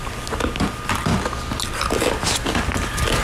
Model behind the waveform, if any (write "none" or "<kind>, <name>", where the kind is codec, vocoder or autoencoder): none